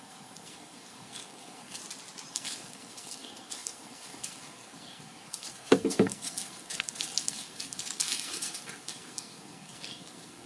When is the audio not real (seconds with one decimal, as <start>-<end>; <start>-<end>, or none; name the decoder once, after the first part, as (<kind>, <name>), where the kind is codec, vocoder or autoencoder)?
0.0-1.8 (codec, SNAC); 2.3-10.5